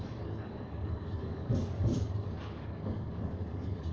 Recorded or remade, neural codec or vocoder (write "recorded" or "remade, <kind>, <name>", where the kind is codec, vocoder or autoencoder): remade, codec, DAC